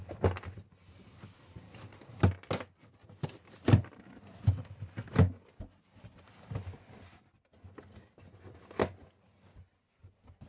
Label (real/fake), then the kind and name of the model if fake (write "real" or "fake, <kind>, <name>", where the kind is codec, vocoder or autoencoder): real